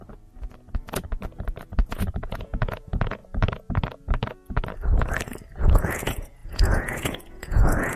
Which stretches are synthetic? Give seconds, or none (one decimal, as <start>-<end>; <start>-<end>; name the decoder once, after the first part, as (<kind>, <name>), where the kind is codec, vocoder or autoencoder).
1.8-3.2 (vocoder, Vocos); 5.6-8.0